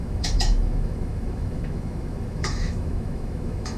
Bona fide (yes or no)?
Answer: no